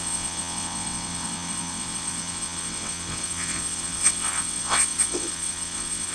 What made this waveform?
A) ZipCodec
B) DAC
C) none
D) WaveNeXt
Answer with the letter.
D